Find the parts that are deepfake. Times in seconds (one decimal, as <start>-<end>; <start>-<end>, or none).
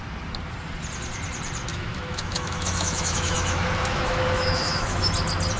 1.7-5.1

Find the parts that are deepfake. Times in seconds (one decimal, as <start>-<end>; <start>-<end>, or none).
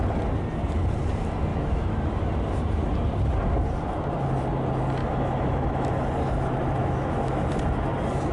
1.5-2.3; 5.0-5.9; 6.8-7.5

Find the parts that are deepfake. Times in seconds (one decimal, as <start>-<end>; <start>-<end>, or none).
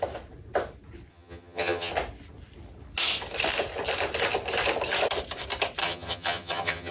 1.1-1.9; 5.8-6.9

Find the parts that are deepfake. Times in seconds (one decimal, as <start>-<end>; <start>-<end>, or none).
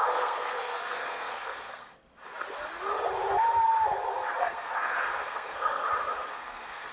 0.0-1.9; 4.4-5.8; 6.3-6.9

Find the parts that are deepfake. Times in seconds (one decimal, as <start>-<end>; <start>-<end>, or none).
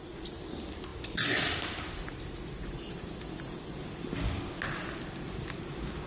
none